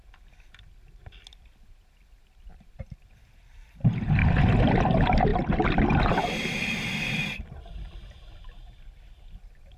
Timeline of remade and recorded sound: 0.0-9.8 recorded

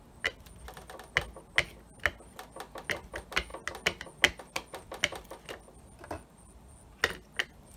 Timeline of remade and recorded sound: 0.0-7.8 recorded

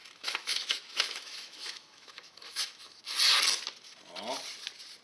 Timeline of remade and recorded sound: 0.0-3.0 remade; 3.0-5.0 recorded

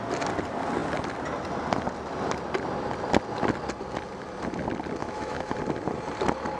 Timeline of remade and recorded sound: 0.0-5.0 recorded; 5.0-5.5 remade; 5.5-6.6 recorded

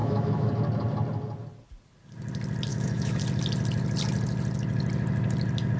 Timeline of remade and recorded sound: 0.0-0.5 remade; 0.5-2.7 recorded; 2.7-3.2 remade; 3.2-5.8 recorded

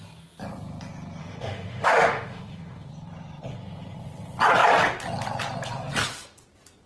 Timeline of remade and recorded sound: 0.0-1.2 recorded; 1.2-2.9 remade; 2.9-6.9 recorded

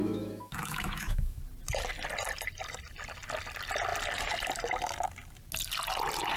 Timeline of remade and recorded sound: 0.0-1.4 remade; 1.4-6.4 recorded